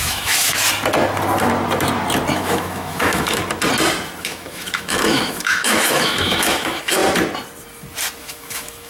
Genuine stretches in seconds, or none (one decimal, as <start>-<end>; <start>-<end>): 0.6-2.3; 3.4-4.2; 7.0-8.2